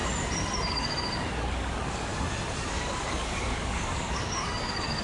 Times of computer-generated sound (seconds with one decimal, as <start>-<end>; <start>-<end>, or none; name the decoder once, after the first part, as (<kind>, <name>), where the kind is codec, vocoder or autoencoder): 0.7-2.1 (codec, DAC); 2.7-5.0